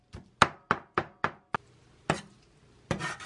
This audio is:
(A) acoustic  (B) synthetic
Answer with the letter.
A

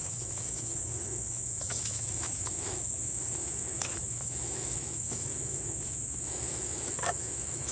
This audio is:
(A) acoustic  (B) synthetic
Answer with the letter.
B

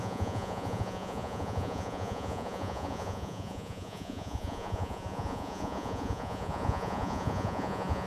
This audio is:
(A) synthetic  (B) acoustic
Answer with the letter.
A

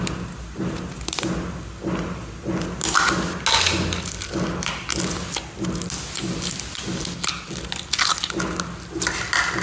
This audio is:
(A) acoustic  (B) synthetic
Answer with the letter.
A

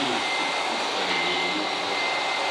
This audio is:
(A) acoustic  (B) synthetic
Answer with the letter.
A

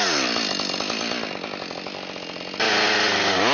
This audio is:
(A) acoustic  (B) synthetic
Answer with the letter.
A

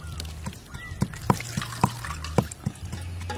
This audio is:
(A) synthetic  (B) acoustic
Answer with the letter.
B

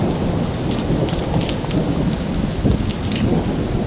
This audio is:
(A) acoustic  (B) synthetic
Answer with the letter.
A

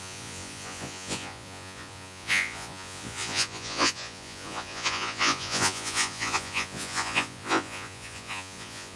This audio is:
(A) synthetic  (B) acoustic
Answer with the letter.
A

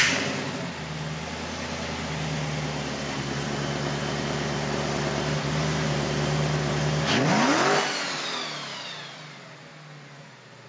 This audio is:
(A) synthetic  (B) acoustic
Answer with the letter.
B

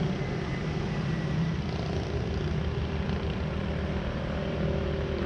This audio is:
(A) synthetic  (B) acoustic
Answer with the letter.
B